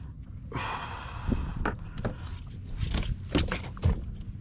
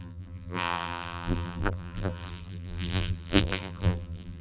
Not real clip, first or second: second